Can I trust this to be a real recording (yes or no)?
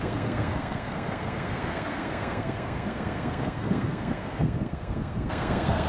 no